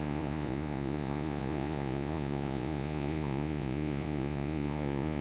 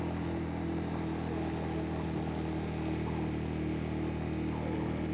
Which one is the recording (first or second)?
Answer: second